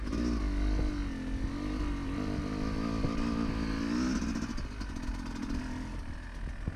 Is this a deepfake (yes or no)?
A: no